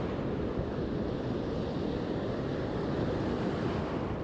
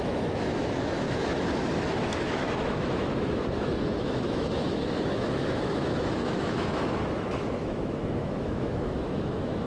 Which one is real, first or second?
first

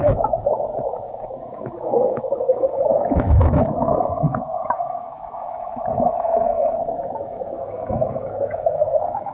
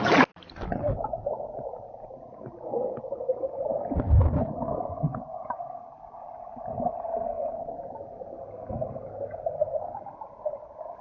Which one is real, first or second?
second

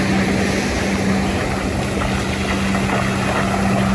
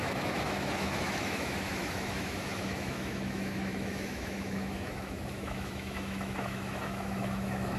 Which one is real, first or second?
first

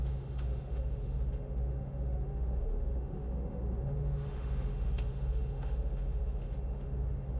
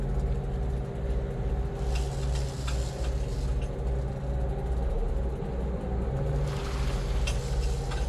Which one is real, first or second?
second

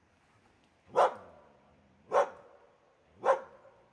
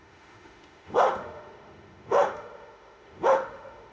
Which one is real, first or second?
first